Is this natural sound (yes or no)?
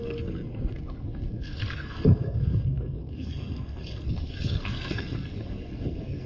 no